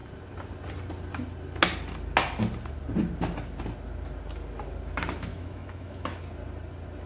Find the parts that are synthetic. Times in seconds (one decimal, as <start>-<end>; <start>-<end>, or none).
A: 5.3-6.2

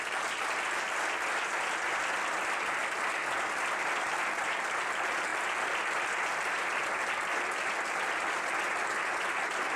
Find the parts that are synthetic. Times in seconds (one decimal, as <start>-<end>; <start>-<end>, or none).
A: none

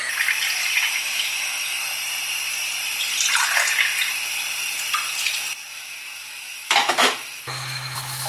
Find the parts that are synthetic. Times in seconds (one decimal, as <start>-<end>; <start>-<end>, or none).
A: 0.9-1.8; 5.7-8.3

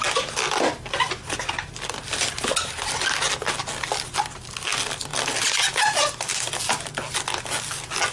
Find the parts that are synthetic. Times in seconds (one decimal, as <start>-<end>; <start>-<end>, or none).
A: none

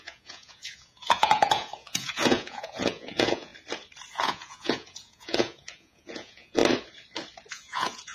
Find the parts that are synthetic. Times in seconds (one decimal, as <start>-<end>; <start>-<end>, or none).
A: 0.0-3.5; 4.1-6.6; 7.5-8.1